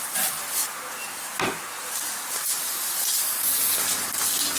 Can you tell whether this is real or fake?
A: real